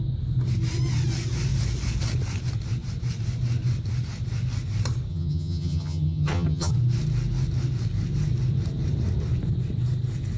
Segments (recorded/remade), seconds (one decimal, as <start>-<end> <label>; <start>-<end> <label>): 0.0-5.1 recorded; 5.1-6.7 remade; 6.7-10.4 recorded